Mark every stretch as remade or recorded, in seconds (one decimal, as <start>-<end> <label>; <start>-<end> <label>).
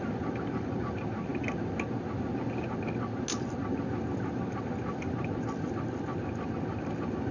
0.0-7.3 recorded